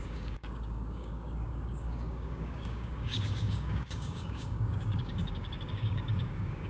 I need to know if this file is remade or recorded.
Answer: remade